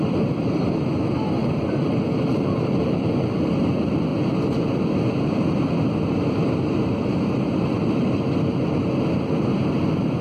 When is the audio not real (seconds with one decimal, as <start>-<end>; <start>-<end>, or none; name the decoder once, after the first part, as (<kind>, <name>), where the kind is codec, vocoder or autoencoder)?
1.4-3.1 (vocoder, BigVGAN v2)